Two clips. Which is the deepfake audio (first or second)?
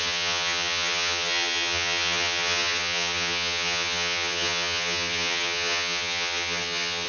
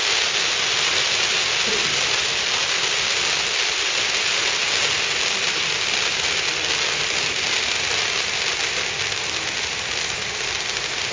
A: first